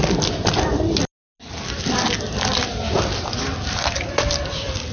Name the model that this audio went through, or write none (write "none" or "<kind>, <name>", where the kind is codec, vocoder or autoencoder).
none